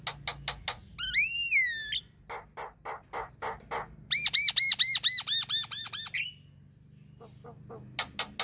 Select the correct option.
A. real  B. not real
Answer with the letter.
A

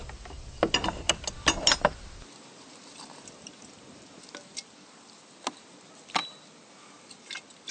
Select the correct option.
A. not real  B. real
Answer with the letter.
B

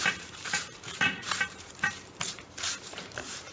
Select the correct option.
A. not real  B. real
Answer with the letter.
A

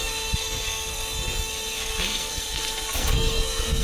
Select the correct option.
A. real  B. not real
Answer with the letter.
B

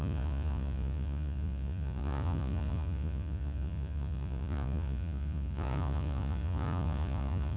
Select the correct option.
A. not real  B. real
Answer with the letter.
A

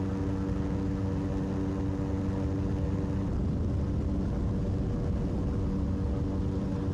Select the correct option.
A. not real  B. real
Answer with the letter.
B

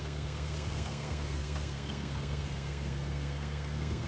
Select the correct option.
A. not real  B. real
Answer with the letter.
A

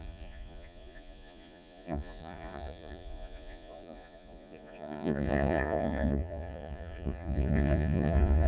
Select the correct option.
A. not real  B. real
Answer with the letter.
A